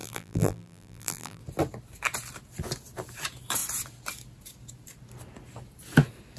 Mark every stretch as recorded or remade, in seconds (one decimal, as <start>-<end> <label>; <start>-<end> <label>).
0.0-1.4 remade; 1.4-6.4 recorded